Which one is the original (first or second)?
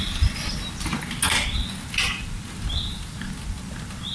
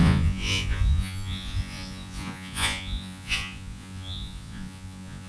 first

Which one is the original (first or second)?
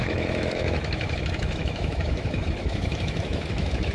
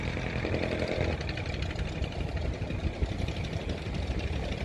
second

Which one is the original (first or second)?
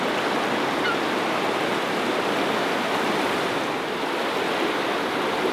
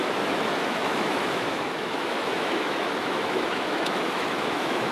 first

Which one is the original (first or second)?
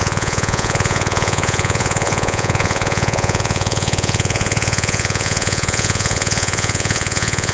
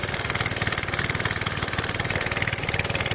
second